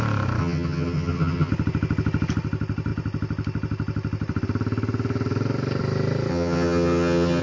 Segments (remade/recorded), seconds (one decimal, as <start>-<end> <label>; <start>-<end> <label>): 0.0-0.4 recorded; 0.4-1.5 remade; 1.5-6.3 recorded; 6.3-7.4 remade